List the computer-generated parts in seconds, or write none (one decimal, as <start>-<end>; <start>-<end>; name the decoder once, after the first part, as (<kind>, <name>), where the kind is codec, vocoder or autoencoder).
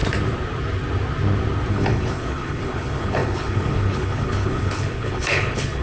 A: 1.7-5.8 (codec, HILCodec)